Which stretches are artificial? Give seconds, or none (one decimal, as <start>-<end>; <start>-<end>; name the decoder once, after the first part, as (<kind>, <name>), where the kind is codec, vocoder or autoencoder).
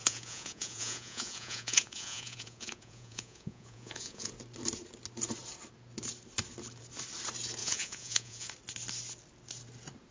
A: 0.0-4.3 (vocoder, Vocos); 7.6-8.5